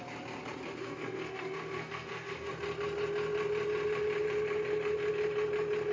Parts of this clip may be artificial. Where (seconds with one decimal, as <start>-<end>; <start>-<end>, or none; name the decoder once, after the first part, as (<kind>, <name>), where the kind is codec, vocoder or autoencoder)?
0.8-2.5 (codec, SNAC)